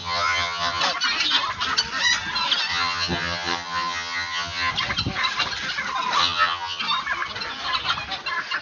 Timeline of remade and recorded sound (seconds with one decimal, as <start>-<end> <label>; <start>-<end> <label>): 0.0-0.8 remade; 0.8-2.7 recorded; 2.7-4.7 remade; 4.7-6.2 recorded; 6.2-6.8 remade; 6.8-8.6 recorded